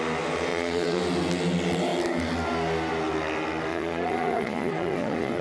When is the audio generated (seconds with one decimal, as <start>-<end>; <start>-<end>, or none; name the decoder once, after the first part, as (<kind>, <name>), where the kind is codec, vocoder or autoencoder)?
0.5-1.0 (vocoder, Vocos); 3.7-5.4